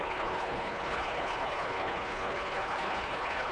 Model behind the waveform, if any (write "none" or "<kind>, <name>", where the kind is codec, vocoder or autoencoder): codec, HILCodec